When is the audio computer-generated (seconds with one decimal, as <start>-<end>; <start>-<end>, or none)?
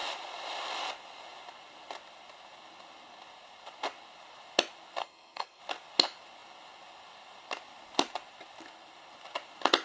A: 5.0-5.6